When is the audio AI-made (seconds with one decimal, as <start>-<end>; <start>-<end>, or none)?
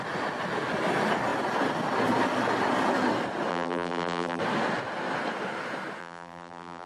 3.5-4.4; 6.0-6.9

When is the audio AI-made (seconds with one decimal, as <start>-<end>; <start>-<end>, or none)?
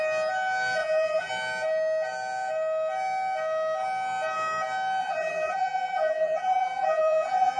0.8-1.3; 5.0-7.6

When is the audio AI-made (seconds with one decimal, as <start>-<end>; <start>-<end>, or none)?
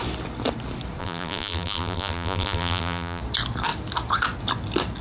1.0-3.2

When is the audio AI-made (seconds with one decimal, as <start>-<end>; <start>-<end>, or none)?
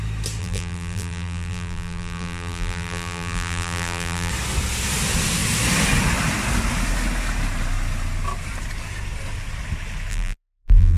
0.4-4.3; 10.1-11.0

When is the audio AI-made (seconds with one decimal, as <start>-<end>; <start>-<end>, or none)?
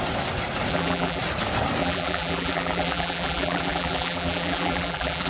0.7-1.2; 1.8-5.3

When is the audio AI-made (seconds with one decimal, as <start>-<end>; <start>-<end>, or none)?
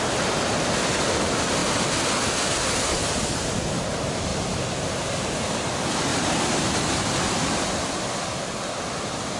4.3-5.0; 6.1-7.0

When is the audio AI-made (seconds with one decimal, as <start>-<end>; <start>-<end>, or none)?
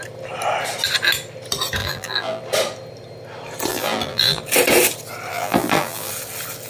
1.8-2.4; 3.7-4.4; 5.3-6.1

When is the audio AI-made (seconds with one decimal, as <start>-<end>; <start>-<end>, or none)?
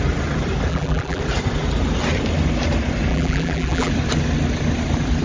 0.7-1.2; 3.1-3.9